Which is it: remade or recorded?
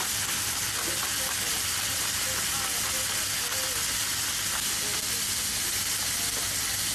recorded